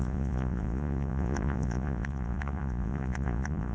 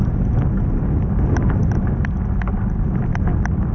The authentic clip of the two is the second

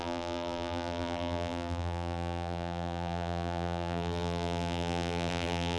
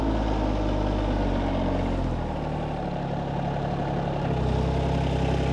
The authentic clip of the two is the second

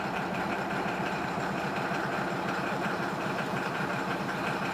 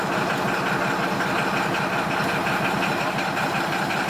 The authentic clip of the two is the second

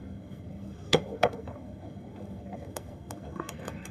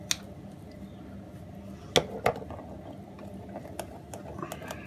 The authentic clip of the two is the second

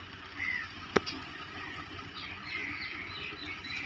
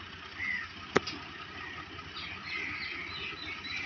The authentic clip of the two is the second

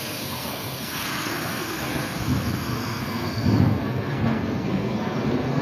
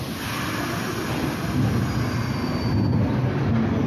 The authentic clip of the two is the second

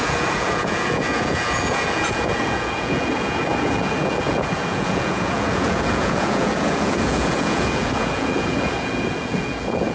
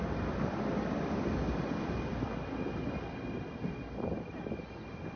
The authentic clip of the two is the second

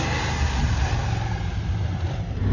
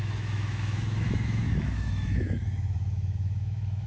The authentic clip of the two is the first